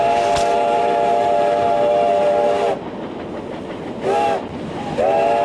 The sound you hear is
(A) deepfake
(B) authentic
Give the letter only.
B